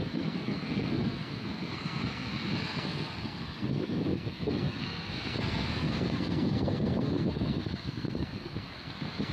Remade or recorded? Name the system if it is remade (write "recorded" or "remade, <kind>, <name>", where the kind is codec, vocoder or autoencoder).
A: remade, codec, SNAC